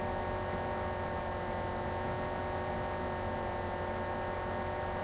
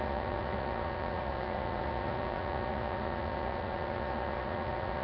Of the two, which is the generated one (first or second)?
second